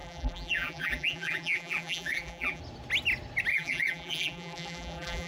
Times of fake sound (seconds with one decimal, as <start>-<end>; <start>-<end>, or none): 0.0-2.6; 3.5-5.3